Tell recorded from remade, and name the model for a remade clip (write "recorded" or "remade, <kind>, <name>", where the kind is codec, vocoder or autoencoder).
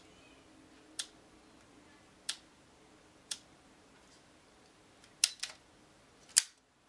recorded